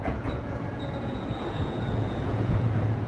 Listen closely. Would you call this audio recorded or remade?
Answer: remade